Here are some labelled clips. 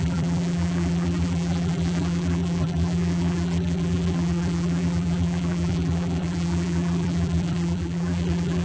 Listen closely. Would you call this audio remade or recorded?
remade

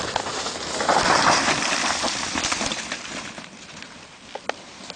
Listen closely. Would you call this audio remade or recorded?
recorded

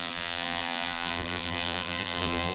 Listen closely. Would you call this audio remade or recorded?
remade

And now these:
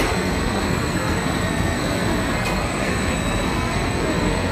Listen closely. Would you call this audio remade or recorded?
remade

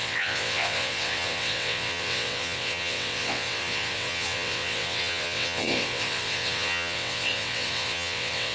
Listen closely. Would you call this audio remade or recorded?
remade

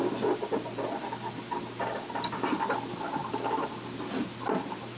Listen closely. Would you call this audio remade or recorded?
recorded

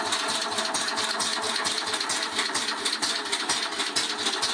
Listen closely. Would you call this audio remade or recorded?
recorded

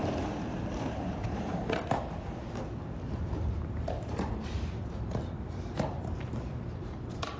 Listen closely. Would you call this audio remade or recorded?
remade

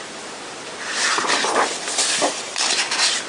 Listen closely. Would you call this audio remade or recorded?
recorded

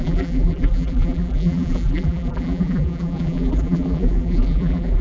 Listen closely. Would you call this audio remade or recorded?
remade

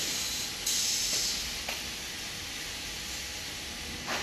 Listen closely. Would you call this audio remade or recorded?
recorded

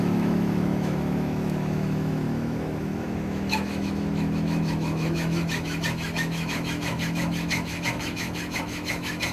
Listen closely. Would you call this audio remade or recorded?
remade